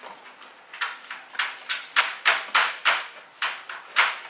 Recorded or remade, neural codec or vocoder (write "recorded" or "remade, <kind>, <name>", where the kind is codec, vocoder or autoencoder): recorded